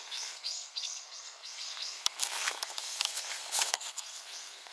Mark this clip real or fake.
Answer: fake